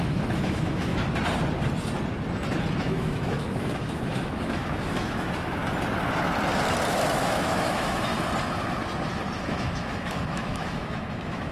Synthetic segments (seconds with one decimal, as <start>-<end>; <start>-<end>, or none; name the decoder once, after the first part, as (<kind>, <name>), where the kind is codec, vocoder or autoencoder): 0.0-0.9 (autoencoder, DAC-VAE); 2.8-5.6; 6.9-8.1; 9.4-11.5